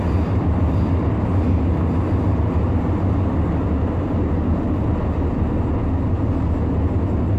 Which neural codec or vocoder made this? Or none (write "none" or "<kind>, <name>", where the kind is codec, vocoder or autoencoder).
none